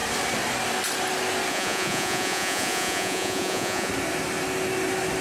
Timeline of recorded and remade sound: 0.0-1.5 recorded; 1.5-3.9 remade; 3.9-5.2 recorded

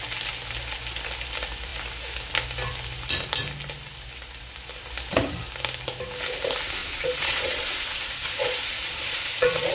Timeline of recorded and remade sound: 0.0-6.8 recorded; 6.8-9.7 remade

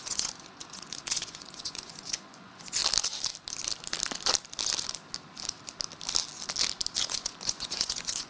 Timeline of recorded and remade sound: 0.0-2.8 remade; 2.8-7.1 recorded; 7.1-8.3 remade

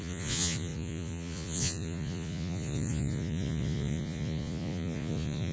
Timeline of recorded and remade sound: 0.0-5.5 remade

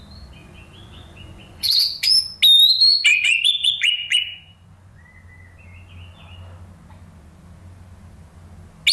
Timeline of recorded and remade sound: 0.0-0.4 recorded; 0.4-2.1 remade; 2.1-3.1 recorded; 3.1-5.0 remade; 5.0-8.9 recorded